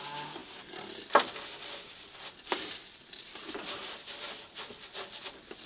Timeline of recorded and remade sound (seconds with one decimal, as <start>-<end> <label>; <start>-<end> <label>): 0.0-5.7 recorded